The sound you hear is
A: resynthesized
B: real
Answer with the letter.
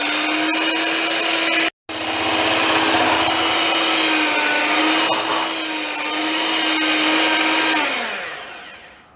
B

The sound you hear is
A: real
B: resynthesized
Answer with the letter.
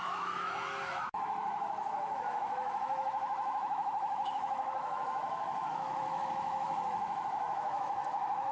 B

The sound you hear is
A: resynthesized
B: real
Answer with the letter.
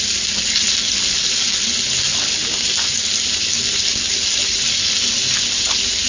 B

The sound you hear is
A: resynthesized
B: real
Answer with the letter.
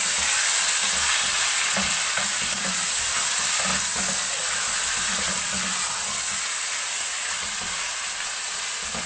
B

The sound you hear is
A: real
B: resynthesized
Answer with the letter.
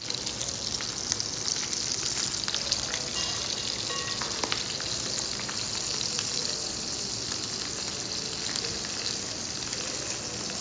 A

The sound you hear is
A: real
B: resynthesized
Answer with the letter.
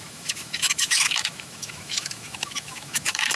B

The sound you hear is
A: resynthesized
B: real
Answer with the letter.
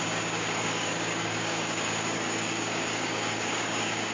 A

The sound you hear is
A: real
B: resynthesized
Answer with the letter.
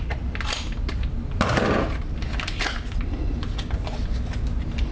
A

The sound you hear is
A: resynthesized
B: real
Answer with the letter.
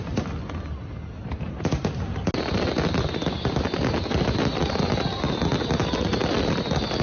B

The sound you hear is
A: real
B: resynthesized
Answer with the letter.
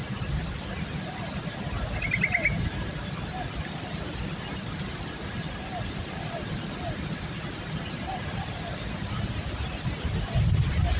A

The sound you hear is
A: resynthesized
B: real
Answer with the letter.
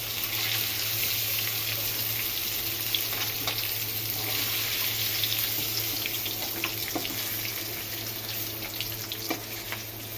B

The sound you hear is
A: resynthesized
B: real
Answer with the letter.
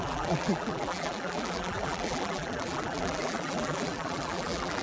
A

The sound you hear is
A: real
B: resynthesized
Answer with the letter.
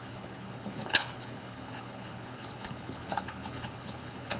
B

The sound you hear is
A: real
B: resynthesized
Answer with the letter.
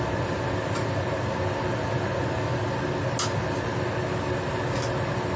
A